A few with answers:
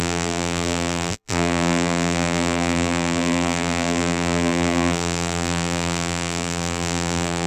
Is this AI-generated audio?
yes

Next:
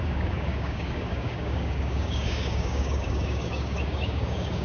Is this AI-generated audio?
yes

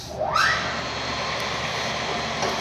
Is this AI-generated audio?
no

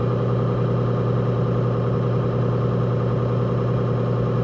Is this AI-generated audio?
no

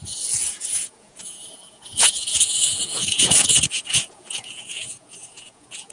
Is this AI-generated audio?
yes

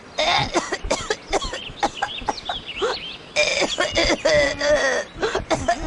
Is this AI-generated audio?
no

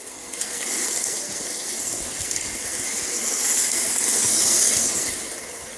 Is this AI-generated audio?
yes